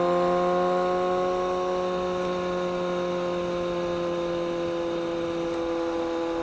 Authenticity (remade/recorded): recorded